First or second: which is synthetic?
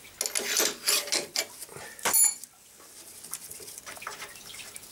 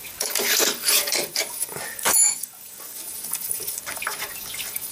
second